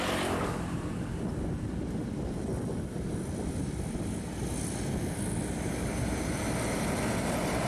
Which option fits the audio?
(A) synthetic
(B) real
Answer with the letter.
B